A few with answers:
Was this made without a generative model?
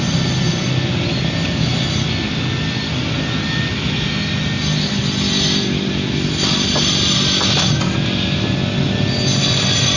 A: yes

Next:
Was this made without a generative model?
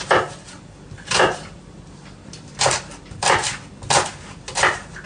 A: yes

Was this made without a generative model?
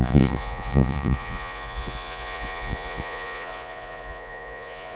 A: no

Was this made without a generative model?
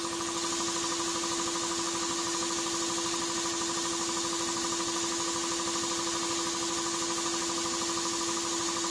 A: yes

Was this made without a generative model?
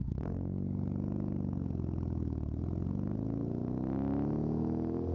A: yes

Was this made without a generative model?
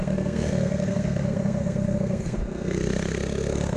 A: no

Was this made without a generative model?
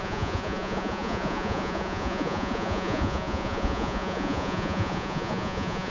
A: no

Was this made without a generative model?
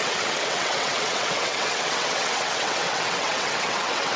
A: no